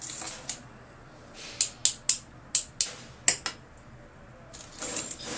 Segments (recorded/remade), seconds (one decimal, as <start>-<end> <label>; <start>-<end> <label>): 0.0-5.4 recorded